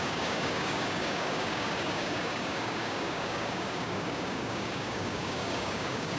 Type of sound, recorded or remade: remade